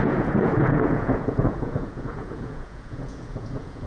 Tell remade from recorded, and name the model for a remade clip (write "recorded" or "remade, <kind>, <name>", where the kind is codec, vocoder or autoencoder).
remade, vocoder, Vocos